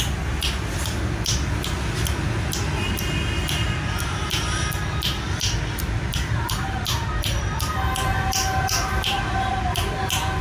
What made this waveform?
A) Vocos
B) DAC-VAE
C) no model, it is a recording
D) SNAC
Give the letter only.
C